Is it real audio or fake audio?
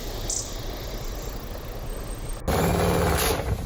real